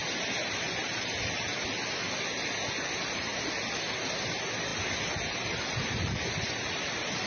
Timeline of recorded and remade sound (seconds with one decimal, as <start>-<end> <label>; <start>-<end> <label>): 0.0-7.3 recorded